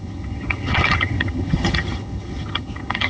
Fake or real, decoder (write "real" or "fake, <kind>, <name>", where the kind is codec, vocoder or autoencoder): fake, vocoder, HiFi-GAN